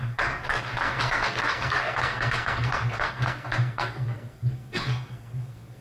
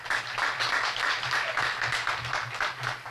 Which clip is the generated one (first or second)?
first